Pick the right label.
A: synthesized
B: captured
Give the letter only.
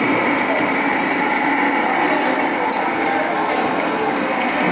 B